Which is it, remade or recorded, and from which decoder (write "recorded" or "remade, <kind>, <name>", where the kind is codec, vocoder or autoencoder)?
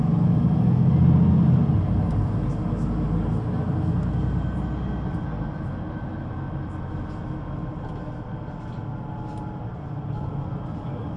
recorded